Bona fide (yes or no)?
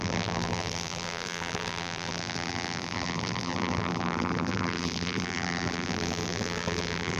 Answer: no